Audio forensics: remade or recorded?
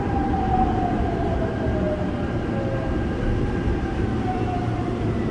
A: recorded